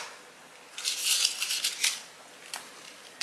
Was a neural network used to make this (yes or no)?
no